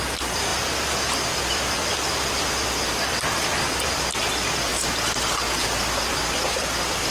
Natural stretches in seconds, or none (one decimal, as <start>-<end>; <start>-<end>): 0.5-1.4; 4.7-6.1